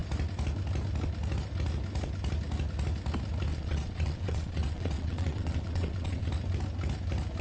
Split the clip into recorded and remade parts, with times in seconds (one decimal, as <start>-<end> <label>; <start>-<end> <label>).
0.0-3.5 recorded; 3.5-6.3 remade; 6.3-7.4 recorded